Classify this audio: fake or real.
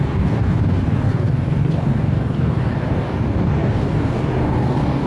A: fake